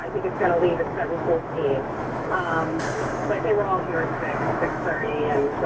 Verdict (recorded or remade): remade